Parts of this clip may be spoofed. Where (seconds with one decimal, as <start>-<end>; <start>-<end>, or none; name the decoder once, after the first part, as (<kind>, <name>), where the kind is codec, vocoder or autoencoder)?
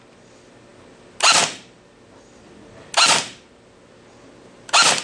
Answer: none